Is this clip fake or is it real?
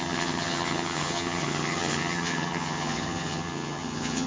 fake